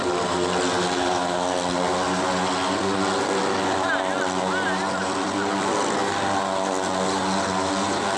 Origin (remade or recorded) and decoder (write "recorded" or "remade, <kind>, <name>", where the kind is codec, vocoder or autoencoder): recorded